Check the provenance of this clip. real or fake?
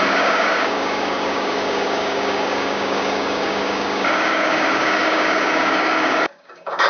fake